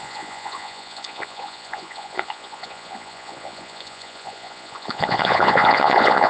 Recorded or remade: remade